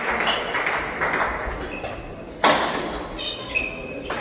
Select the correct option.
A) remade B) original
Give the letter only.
B